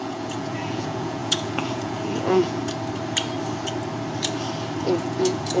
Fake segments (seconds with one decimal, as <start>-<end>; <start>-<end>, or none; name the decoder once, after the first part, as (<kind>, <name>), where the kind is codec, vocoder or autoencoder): 0.0-2.6 (vocoder, Vocos); 4.8-5.6